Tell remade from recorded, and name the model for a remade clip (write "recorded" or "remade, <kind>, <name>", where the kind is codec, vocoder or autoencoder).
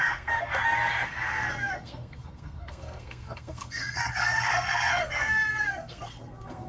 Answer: remade, codec, SNAC